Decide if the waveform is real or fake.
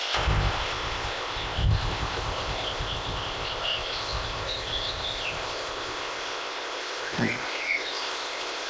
fake